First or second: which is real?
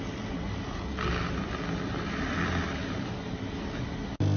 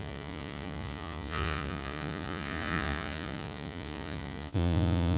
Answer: first